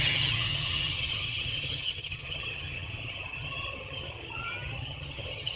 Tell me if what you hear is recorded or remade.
remade